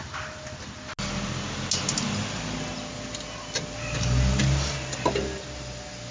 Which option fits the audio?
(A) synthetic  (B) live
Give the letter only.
B